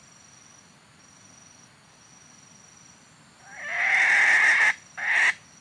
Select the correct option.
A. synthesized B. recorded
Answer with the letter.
B